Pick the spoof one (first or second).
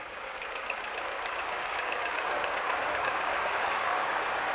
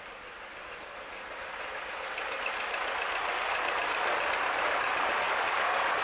first